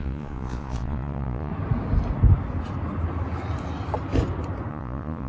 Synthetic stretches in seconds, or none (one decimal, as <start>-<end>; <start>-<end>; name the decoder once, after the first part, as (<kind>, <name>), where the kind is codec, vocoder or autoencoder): 0.0-1.5 (vocoder, Vocos); 4.7-5.3

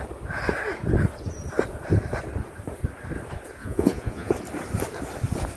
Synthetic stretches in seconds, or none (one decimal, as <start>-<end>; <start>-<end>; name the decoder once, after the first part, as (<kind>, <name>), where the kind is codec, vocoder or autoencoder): 3.6-4.3 (vocoder, Vocos)

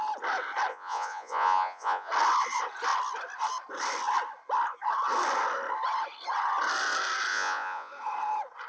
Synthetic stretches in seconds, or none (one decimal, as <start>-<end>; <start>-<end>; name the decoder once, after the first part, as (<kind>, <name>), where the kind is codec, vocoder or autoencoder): 0.7-2.1 (vocoder, Vocos); 7.3-7.9